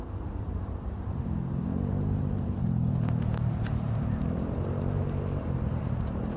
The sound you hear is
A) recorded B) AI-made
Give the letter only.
B